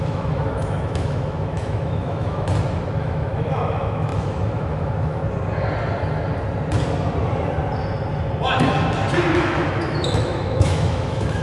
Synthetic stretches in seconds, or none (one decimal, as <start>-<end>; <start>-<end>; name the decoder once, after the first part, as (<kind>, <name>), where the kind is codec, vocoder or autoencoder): 0.0-2.5 (autoencoder, DAC-VAE); 3.0-5.2; 9.4-11.4